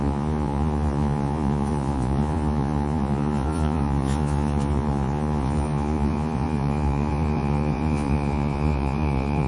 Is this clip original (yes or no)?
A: no